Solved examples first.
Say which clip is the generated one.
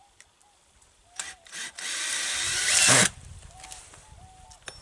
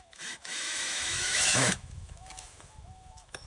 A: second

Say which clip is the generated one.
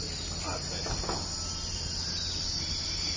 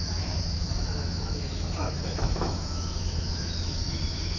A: second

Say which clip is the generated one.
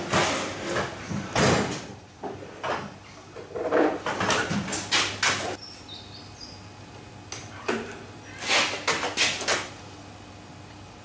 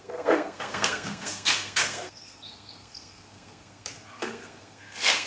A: second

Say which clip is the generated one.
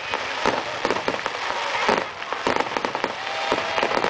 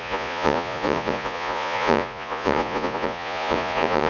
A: second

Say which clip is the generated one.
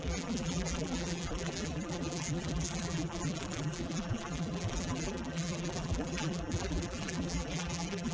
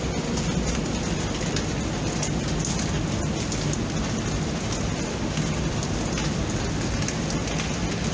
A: first